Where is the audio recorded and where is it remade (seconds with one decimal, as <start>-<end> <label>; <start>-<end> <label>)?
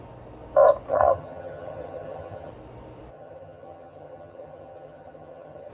0.0-0.9 recorded; 0.9-2.5 remade; 2.5-3.1 recorded; 3.1-5.7 remade